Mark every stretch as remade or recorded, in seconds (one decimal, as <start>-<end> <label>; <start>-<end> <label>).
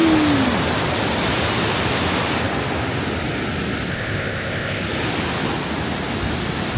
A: 0.0-3.9 recorded; 3.9-4.8 remade; 4.8-6.8 recorded